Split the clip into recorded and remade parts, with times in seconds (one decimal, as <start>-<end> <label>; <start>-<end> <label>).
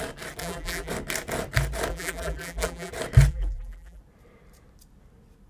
0.0-0.4 recorded; 0.4-0.9 remade; 0.9-1.9 recorded; 1.9-2.9 remade; 2.9-3.3 recorded; 3.3-4.0 remade; 4.0-5.5 recorded